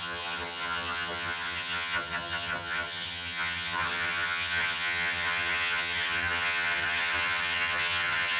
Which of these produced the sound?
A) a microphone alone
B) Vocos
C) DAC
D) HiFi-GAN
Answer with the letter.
D